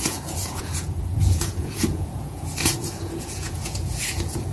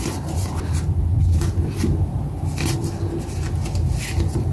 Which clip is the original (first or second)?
second